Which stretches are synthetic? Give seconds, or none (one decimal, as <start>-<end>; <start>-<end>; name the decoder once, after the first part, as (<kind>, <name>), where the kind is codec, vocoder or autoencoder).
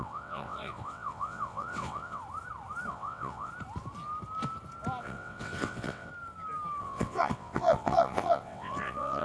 0.0-2.2 (vocoder, WaveNeXt); 2.9-3.5; 5.0-6.1; 6.8-9.2